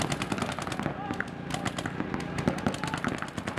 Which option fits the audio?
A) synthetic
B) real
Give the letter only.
B